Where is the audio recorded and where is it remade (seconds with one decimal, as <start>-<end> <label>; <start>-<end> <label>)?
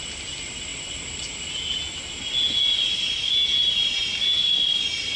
0.0-5.2 recorded